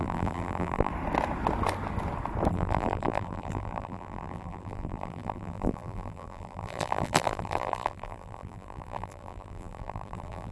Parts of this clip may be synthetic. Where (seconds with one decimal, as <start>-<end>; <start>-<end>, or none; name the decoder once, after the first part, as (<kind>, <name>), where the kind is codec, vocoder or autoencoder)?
0.0-0.9 (vocoder, BigVGAN v2); 2.5-10.5